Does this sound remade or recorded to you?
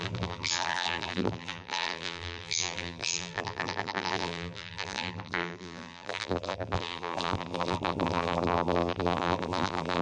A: remade